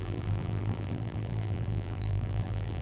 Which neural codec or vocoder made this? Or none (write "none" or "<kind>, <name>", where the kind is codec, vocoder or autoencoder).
vocoder, BigVGAN v2